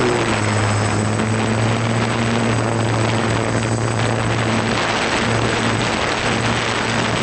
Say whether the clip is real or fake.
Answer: real